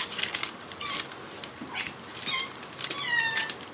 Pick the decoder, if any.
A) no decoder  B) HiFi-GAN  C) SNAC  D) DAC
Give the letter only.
A